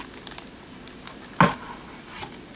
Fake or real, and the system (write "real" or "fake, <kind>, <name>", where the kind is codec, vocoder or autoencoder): real